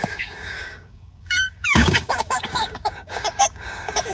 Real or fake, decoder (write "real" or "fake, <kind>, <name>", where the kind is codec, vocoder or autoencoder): fake, codec, DAC